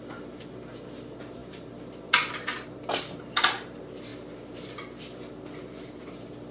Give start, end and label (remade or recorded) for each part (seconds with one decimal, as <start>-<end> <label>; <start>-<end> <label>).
0.0-6.5 recorded